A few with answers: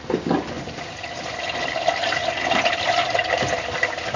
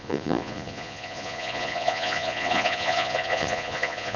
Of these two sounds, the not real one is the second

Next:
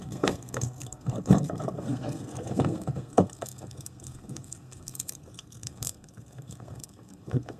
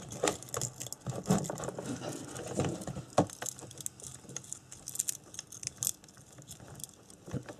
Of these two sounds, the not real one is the first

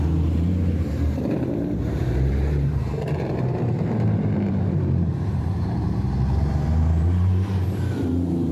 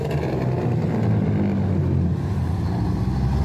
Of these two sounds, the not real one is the first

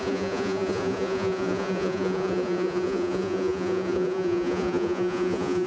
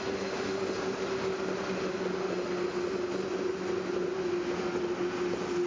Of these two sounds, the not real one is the first